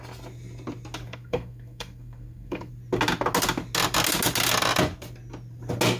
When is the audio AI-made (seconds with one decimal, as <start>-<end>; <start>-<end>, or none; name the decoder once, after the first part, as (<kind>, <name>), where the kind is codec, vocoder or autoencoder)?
1.1-2.7 (codec, SNAC)